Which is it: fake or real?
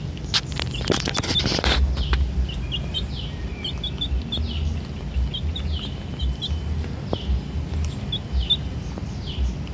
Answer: real